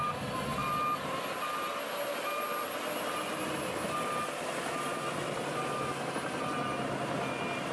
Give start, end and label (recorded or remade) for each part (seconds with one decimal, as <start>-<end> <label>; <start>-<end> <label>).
0.0-7.7 recorded